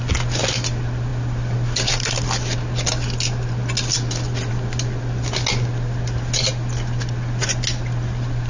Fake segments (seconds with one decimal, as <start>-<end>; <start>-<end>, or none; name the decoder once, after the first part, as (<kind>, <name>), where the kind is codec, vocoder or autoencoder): none